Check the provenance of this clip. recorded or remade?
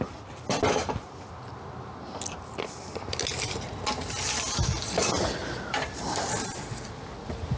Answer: recorded